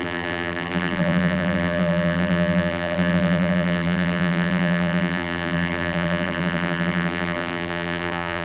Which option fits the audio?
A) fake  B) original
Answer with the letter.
A